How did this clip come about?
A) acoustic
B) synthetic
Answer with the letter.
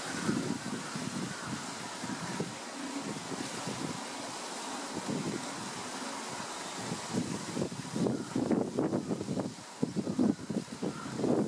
A